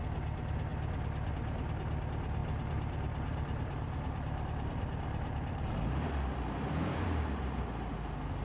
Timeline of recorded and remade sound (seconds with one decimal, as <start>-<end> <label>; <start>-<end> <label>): 0.0-2.4 recorded; 2.4-7.2 remade; 7.2-8.4 recorded